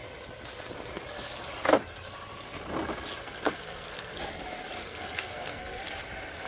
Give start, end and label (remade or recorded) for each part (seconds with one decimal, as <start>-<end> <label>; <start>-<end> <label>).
0.0-3.2 recorded; 3.2-4.2 remade; 4.2-4.8 recorded; 4.8-5.8 remade; 5.8-6.5 recorded